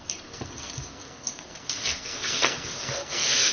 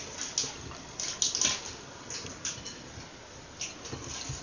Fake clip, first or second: first